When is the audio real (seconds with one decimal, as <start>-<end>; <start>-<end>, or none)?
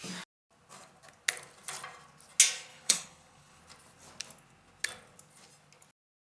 0.0-2.7; 3.6-6.3